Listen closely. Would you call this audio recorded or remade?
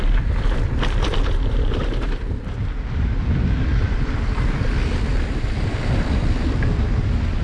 remade